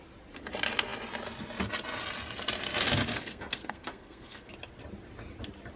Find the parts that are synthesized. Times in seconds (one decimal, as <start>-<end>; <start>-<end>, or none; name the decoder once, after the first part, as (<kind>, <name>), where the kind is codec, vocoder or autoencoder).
3.1-4.5 (codec, SNAC)